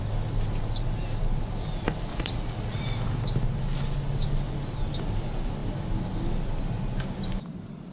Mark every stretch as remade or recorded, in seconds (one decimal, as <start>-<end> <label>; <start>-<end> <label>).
0.0-2.1 recorded; 2.1-2.8 remade; 2.8-7.9 recorded